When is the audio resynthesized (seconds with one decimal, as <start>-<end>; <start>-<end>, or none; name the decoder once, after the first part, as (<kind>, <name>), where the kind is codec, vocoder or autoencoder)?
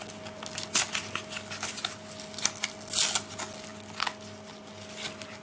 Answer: none